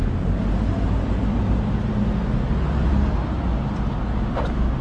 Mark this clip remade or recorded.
recorded